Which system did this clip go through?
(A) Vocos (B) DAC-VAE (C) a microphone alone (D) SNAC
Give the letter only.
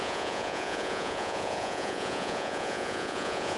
A